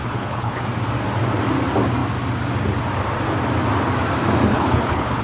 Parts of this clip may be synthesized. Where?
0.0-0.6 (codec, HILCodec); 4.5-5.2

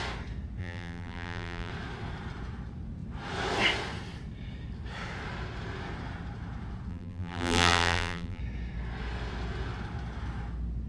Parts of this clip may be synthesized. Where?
0.6-1.7 (vocoder, BigVGAN v2); 6.9-8.4

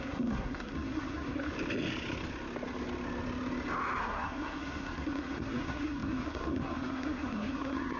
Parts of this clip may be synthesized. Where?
0.0-1.5 (codec, SNAC); 4.0-8.0